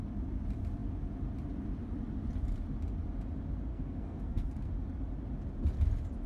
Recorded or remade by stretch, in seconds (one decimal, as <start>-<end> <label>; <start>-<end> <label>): 0.0-3.7 recorded; 3.7-4.7 remade; 4.7-6.3 recorded